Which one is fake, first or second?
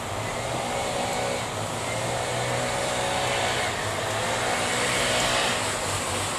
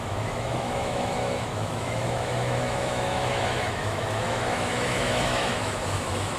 second